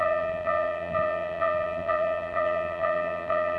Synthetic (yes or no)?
yes